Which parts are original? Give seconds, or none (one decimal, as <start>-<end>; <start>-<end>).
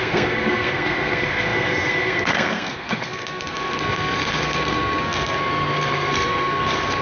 none